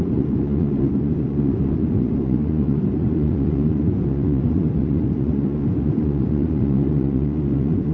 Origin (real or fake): fake